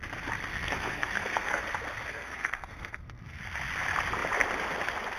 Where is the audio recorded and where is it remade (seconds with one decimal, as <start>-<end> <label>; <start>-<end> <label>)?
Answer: 0.0-0.5 recorded; 0.5-1.6 remade; 1.6-2.1 recorded; 2.1-3.4 remade; 3.4-5.2 recorded